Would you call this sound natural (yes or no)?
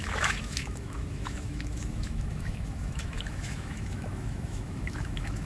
no